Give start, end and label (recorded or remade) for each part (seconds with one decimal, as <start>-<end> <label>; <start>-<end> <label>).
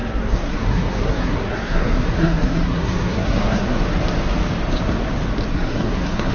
0.0-3.8 remade; 3.8-5.5 recorded; 5.5-6.3 remade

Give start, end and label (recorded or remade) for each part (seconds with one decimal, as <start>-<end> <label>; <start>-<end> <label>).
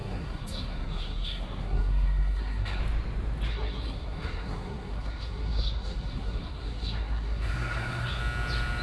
0.0-2.8 remade; 2.8-3.5 recorded; 3.5-8.2 remade; 8.2-8.8 recorded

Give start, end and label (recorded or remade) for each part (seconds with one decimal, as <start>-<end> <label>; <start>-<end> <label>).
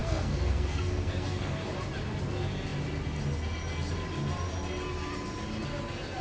0.0-1.7 remade; 1.7-6.2 recorded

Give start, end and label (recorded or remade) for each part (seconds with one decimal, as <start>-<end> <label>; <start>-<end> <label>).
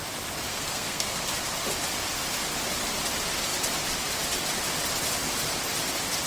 0.0-0.5 recorded; 0.5-1.2 remade; 1.2-6.3 recorded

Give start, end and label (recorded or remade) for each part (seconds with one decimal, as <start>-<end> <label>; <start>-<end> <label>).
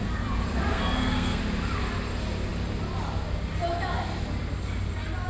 0.0-0.7 recorded; 0.7-1.4 remade; 1.4-5.3 recorded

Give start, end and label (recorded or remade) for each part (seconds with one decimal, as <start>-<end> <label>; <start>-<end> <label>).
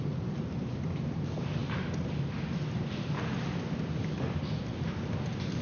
0.0-5.6 recorded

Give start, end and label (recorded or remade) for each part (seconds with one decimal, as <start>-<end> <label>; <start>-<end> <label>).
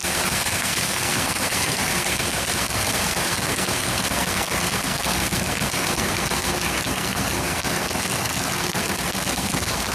0.0-9.9 remade